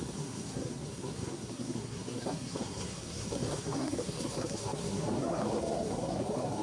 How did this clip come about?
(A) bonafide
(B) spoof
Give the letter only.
B